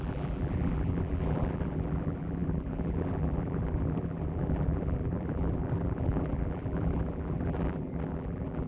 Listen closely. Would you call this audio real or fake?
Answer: fake